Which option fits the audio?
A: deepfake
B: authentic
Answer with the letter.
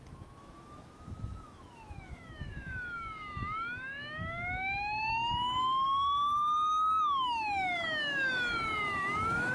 A